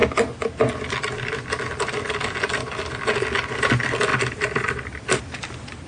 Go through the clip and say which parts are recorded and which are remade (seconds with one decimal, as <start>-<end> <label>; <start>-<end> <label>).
0.0-5.9 recorded